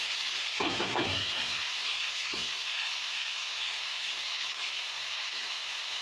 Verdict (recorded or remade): remade